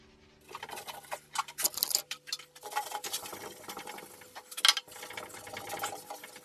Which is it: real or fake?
real